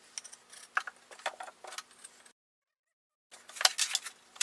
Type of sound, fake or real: real